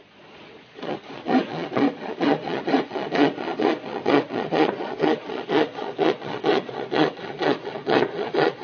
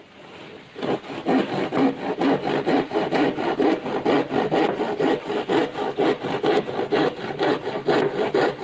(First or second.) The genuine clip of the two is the second